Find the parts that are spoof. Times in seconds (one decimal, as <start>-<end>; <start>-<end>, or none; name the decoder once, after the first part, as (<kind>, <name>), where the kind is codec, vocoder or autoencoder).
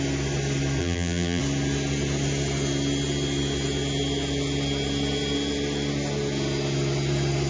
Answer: 0.8-1.4 (vocoder, BigVGAN v2)